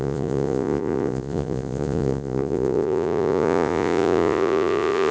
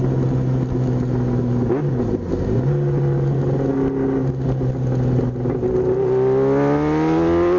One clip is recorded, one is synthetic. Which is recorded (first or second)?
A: second